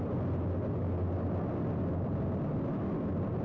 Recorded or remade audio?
recorded